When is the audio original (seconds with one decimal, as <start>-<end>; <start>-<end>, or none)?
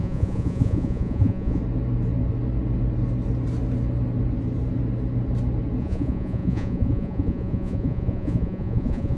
1.6-5.8